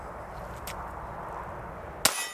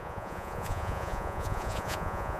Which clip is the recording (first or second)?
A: first